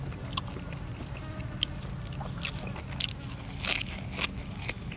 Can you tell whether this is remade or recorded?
recorded